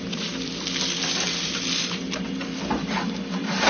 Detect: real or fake fake